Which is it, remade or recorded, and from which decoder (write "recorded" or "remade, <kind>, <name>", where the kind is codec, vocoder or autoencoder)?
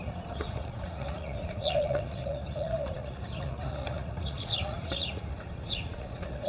remade, vocoder, Vocos